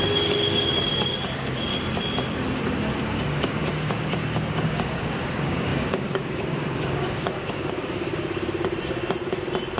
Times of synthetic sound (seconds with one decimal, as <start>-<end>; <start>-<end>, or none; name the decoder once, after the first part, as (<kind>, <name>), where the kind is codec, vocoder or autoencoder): 0.0-1.7 (codec, DAC); 3.0-8.1